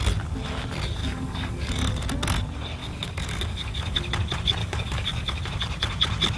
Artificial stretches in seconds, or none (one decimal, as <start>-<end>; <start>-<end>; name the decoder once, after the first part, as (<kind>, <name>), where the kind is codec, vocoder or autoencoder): 1.0-1.7 (codec, DAC); 2.8-4.1; 4.6-5.4